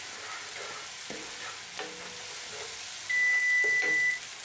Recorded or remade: recorded